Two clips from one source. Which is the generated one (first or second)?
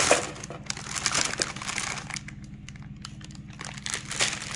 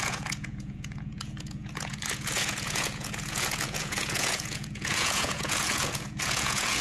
second